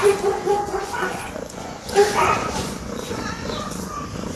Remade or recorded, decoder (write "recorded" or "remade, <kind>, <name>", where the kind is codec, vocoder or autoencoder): remade, vocoder, Vocos